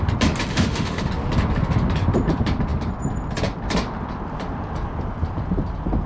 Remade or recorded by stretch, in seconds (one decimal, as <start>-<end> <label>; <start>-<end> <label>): 0.0-0.5 recorded; 0.5-1.1 remade; 1.1-6.1 recorded